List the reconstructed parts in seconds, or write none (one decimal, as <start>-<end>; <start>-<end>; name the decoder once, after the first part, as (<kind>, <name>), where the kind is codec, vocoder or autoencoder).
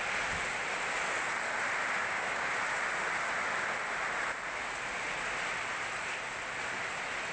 2.0-2.5 (codec, DAC)